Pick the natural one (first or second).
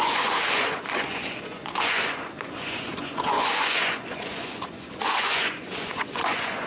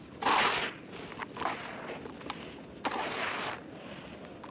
second